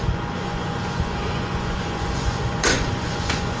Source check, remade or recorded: remade